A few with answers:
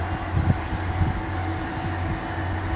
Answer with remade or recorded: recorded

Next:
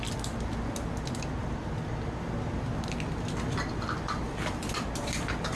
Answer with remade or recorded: recorded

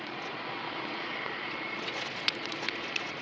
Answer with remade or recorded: remade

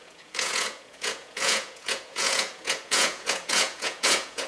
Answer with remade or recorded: remade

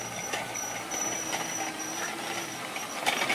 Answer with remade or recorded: recorded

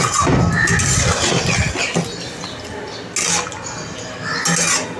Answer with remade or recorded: recorded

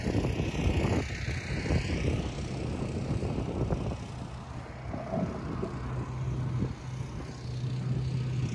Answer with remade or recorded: recorded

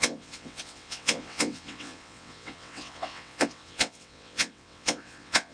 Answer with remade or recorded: remade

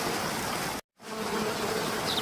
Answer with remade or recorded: recorded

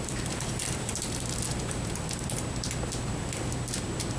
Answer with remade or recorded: remade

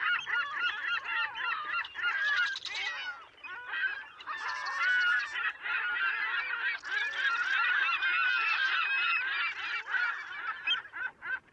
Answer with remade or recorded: recorded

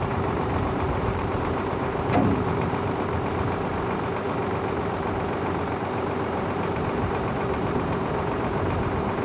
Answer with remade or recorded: remade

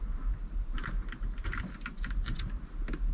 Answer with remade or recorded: recorded